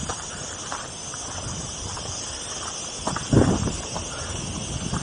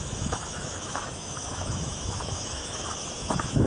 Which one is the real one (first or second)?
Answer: first